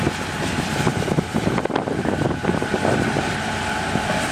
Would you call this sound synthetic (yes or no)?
no